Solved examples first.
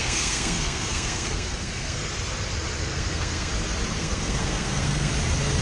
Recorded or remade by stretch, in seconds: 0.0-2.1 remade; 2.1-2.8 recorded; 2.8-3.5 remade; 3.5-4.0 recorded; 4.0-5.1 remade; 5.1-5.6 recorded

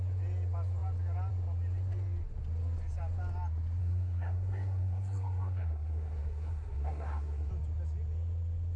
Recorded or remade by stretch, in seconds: 0.0-3.8 recorded; 3.8-7.5 remade; 7.5-8.8 recorded

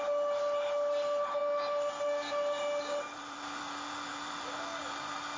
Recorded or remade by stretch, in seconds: 0.0-5.4 recorded

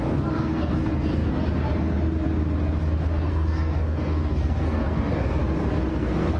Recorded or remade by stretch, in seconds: 0.0-1.3 remade; 1.3-3.3 recorded; 3.3-5.4 remade; 5.4-5.9 recorded; 5.9-6.4 remade

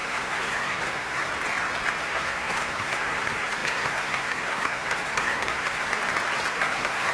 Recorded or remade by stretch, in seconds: 0.0-1.3 remade; 1.3-2.0 recorded; 2.0-5.9 remade; 5.9-6.5 recorded; 6.5-7.1 remade

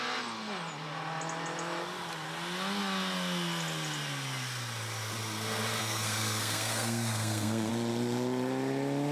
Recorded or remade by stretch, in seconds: 0.0-5.8 recorded; 5.8-7.7 remade; 7.7-9.1 recorded

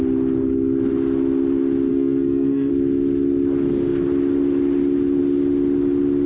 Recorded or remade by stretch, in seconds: 0.0-1.9 recorded; 1.9-2.7 remade; 2.7-6.3 recorded